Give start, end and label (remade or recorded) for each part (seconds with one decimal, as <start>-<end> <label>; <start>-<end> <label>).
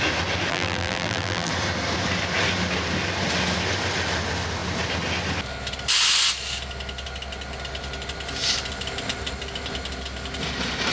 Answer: 0.0-0.5 recorded; 0.5-1.5 remade; 1.5-10.9 recorded